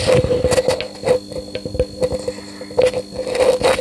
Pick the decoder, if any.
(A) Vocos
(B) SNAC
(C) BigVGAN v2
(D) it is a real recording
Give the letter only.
D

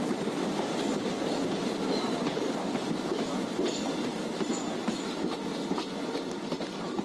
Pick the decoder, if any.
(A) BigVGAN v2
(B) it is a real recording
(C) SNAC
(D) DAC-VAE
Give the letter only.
B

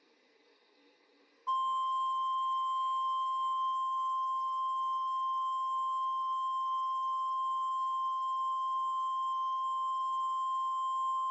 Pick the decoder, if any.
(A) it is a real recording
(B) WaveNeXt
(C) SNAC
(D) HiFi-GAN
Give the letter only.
C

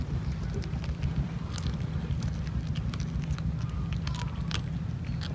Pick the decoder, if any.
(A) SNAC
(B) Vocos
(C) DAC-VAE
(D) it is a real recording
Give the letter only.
D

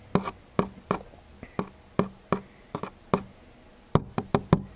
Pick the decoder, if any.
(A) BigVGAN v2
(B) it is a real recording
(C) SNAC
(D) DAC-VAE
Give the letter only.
B